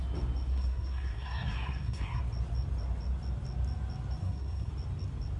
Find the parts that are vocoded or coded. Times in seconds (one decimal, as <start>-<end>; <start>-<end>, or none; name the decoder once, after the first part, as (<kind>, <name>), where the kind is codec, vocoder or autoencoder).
0.5-2.2 (codec, SNAC); 4.2-4.7